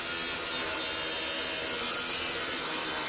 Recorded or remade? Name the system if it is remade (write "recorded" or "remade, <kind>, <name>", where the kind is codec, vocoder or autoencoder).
recorded